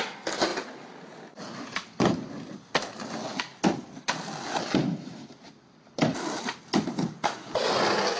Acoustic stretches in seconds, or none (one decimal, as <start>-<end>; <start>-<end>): 0.0-8.2

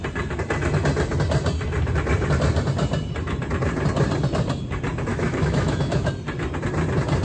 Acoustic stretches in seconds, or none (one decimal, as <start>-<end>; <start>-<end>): 0.0-5.1; 6.1-7.2